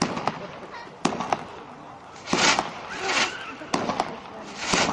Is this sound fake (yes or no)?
no